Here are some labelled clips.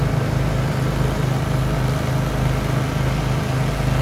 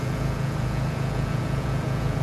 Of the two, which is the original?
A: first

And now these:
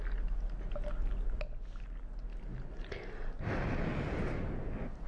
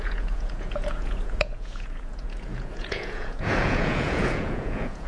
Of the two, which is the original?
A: first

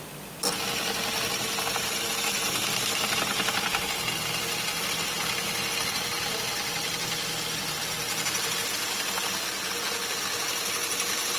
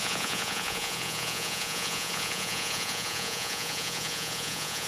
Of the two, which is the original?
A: first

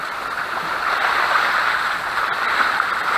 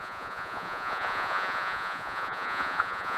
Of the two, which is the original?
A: first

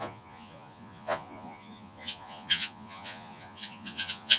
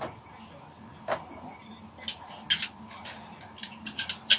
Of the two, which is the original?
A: second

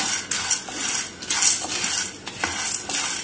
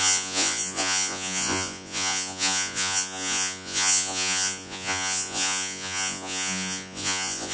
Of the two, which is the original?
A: first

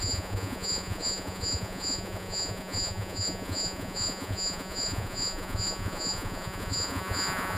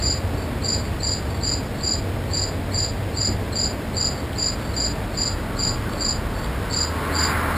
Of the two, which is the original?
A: second